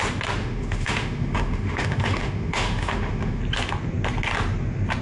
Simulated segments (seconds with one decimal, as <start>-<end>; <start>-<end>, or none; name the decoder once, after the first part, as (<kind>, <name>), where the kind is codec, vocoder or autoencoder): 0.4-3.4 (autoencoder, DAC-VAE)